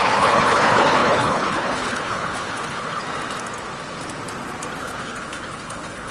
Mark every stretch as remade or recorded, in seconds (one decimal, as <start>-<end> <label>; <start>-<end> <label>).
0.0-3.0 remade; 3.0-4.8 recorded; 4.8-6.1 remade